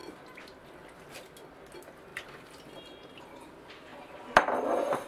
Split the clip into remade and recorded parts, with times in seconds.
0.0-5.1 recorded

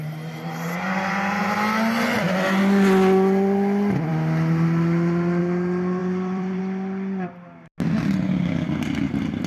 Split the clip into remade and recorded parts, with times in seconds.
0.0-6.0 recorded; 6.0-6.6 remade; 6.6-9.5 recorded

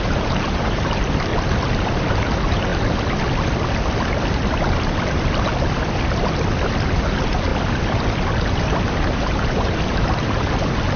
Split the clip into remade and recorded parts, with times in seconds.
0.0-1.3 remade; 1.3-2.1 recorded; 2.1-2.7 remade; 2.7-7.1 recorded; 7.1-7.5 remade; 7.5-8.5 recorded; 8.5-11.0 remade

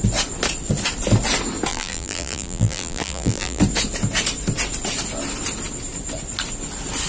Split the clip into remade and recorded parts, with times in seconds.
0.0-1.7 recorded; 1.7-3.6 remade; 3.6-7.1 recorded

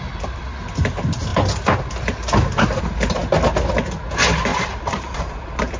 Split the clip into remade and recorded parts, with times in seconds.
0.0-4.5 recorded; 4.5-5.8 remade

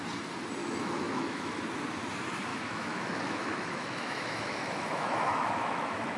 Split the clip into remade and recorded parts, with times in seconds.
0.0-0.6 recorded; 0.6-1.6 remade; 1.6-2.5 recorded; 2.5-6.2 remade

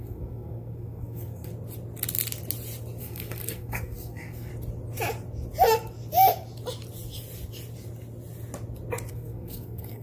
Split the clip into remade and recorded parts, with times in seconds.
0.0-1.5 remade; 1.5-3.0 recorded; 3.0-4.5 remade; 4.5-9.1 recorded; 9.1-10.0 remade

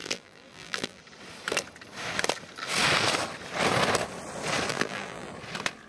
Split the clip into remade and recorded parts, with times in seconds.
0.0-1.0 remade; 1.0-4.7 recorded; 4.7-5.3 remade; 5.3-5.9 recorded